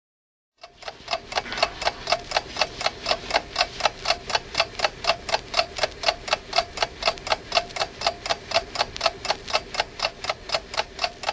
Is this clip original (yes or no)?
yes